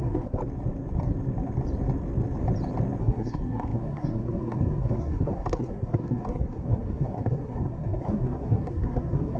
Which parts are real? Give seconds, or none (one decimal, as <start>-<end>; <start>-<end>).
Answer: 0.4-3.0